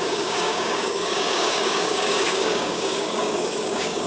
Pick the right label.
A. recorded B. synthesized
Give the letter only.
B